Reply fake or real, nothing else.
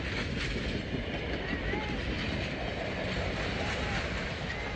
real